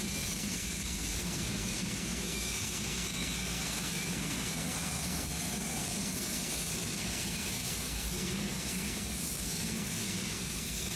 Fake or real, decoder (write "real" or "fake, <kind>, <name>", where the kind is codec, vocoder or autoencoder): fake, codec, SNAC